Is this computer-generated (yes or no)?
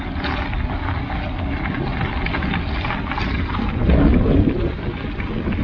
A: no